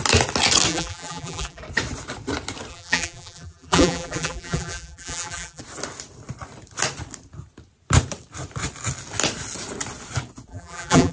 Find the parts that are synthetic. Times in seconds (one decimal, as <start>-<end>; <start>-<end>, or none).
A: 0.7-1.6; 2.7-5.6; 10.5-11.1

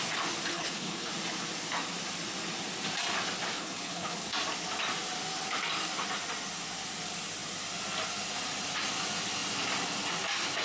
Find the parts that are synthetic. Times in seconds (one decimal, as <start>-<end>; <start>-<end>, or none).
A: 0.5-1.1; 3.5-4.3